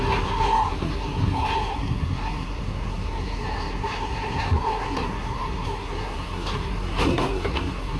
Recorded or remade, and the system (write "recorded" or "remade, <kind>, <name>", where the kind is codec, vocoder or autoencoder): remade, codec, SNAC